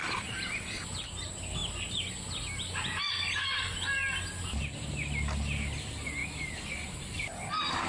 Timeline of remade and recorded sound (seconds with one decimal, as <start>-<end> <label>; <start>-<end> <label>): 0.0-1.6 remade; 1.6-4.6 recorded; 4.6-6.2 remade; 6.2-6.9 recorded; 6.9-7.9 remade